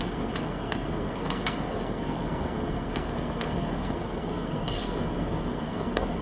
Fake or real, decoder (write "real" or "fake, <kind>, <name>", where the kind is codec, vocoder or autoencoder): fake, codec, SNAC